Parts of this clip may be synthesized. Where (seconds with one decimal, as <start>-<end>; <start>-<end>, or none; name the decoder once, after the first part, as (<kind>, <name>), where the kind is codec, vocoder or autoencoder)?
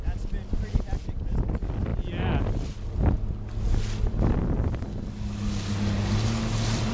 none